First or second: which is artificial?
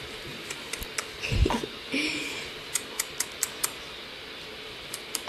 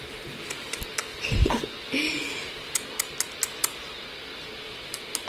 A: first